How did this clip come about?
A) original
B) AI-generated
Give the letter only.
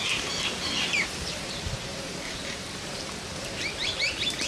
B